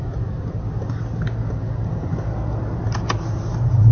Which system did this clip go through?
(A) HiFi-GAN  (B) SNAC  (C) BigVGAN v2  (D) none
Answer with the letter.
D